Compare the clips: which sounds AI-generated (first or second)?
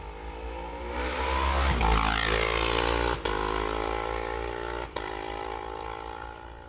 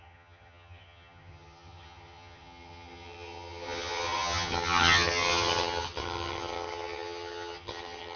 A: second